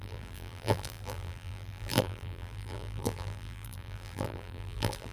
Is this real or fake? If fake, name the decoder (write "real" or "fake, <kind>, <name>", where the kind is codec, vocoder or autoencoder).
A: fake, vocoder, BigVGAN v2